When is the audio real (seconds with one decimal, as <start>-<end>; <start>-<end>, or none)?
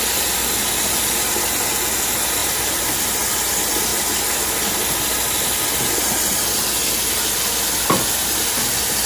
0.0-9.1